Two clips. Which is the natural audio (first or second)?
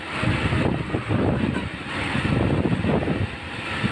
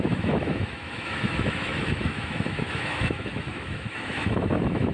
first